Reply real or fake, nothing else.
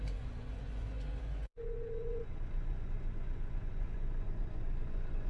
fake